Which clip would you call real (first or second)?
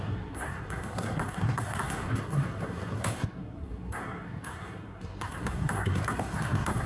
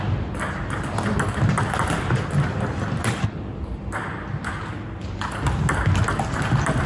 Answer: second